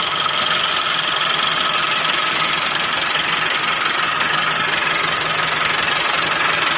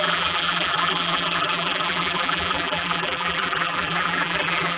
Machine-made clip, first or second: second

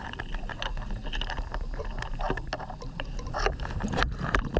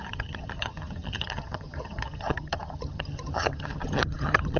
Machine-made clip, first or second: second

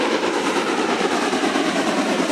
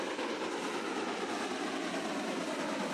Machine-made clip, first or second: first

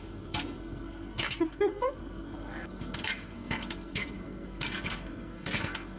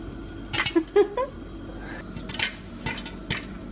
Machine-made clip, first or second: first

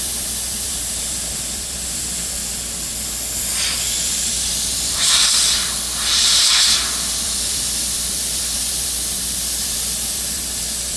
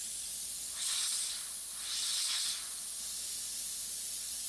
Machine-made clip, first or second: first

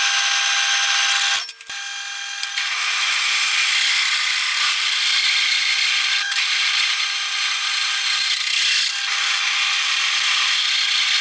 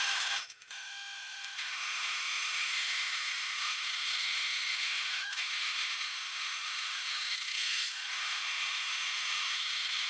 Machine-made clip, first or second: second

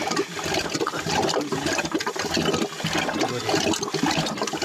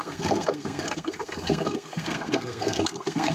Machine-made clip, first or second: second